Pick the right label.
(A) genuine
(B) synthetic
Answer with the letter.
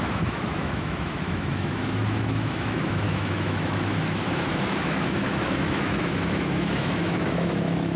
B